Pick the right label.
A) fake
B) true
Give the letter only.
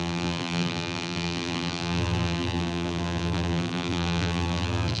A